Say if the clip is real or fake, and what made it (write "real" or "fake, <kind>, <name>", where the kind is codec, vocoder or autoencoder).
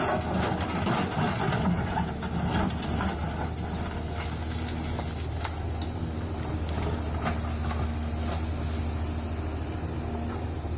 real